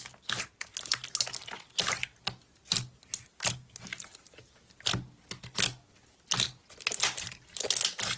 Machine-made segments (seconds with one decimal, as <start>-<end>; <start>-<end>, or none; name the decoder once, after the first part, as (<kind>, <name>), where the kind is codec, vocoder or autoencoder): none